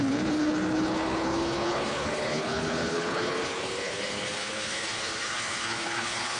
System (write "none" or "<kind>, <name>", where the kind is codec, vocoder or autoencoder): codec, HILCodec